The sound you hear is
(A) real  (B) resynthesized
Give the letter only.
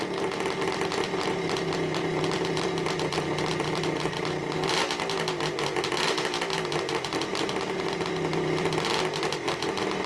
A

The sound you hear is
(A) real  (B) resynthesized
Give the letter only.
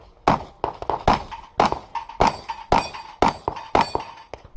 A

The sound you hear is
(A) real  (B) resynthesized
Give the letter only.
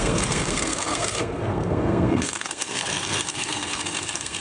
B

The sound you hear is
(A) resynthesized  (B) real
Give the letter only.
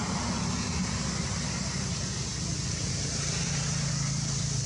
B